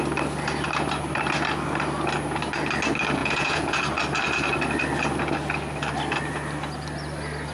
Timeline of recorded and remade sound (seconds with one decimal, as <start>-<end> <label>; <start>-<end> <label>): 0.0-3.2 recorded; 3.2-3.8 remade; 3.8-7.5 recorded